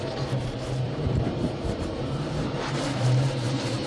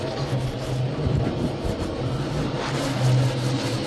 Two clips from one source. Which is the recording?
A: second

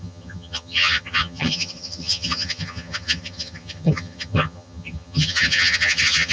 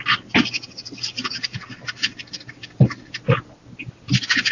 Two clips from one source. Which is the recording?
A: second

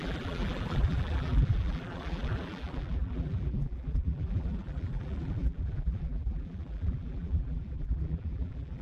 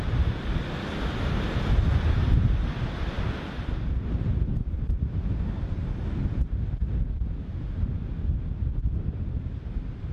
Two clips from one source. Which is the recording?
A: second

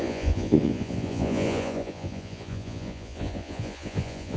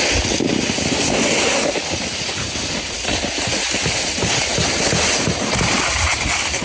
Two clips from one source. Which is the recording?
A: second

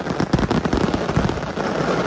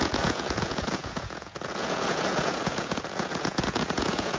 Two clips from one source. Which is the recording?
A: first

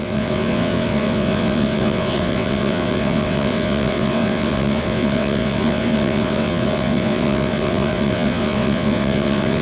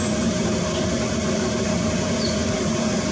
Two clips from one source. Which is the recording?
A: second